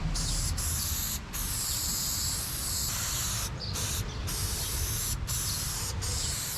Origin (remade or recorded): recorded